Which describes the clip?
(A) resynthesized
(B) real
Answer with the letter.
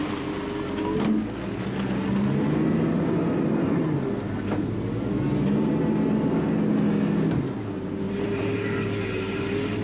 B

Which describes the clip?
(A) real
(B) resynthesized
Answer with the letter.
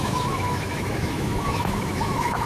B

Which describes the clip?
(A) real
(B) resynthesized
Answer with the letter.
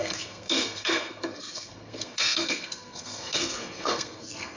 B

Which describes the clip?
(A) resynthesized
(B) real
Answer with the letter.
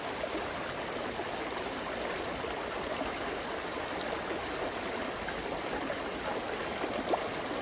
B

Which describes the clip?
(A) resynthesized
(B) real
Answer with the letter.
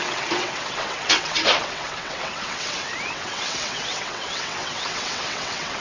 A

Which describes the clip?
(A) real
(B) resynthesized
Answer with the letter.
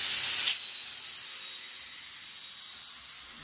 A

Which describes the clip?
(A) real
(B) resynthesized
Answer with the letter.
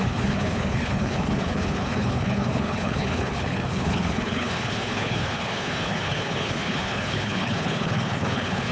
B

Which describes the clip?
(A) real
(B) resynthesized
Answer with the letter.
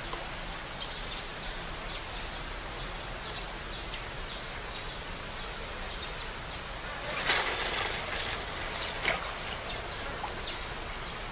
A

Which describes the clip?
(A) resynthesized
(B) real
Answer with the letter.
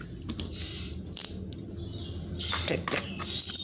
B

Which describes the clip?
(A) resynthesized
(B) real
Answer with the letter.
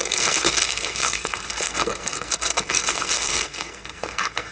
A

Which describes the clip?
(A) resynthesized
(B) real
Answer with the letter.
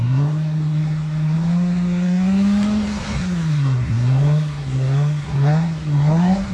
A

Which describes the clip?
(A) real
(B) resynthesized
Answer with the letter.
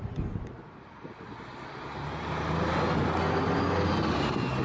A